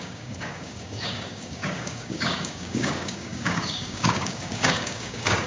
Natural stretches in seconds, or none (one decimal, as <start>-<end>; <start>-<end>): none